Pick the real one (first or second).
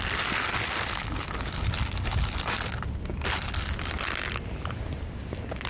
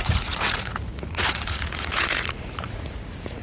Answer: first